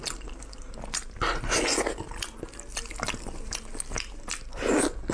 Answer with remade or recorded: recorded